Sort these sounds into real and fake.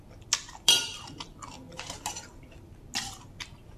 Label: real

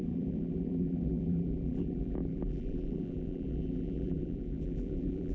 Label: fake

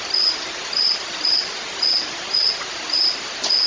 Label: fake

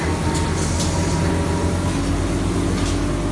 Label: real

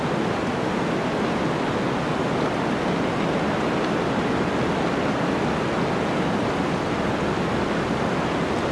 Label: real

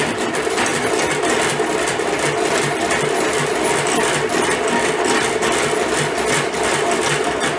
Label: real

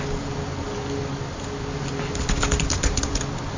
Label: real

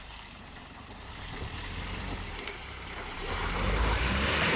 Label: fake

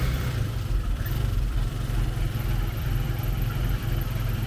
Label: fake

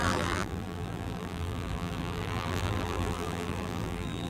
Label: fake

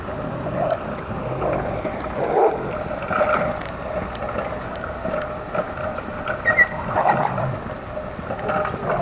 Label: real